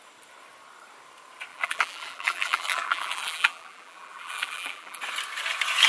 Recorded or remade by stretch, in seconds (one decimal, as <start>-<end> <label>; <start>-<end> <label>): 0.0-1.5 recorded; 1.5-5.0 remade; 5.0-5.9 recorded